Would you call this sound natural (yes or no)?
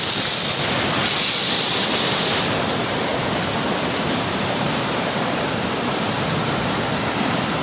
yes